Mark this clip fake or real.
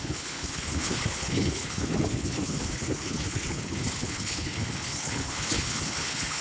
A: fake